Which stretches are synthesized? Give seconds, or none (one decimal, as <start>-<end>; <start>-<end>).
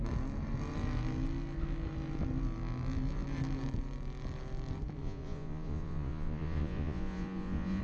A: 5.0-7.8